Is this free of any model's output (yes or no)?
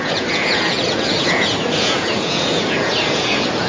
no